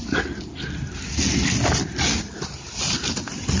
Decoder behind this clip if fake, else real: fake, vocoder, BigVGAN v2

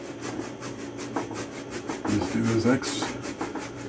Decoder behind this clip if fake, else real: real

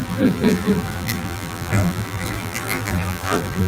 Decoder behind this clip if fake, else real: fake, vocoder, BigVGAN v2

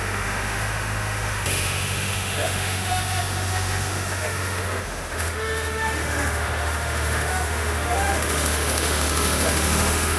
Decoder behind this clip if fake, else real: fake, autoencoder, DAC-VAE